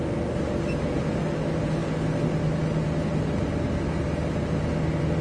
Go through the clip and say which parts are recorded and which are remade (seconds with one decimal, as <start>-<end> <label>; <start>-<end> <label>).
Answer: 0.0-5.2 recorded